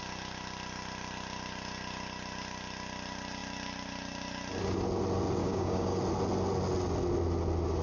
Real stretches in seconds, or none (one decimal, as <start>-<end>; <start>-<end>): 0.0-5.4; 6.0-7.8